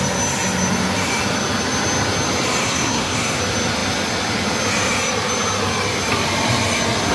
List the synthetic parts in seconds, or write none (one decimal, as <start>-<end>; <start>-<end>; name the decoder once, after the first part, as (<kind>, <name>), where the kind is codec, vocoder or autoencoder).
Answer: 2.6-3.4 (codec, SNAC)